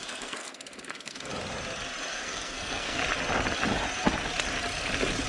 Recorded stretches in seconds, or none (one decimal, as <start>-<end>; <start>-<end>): 1.3-2.1; 3.0-5.3